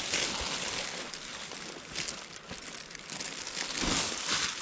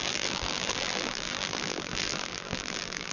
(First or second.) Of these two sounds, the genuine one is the first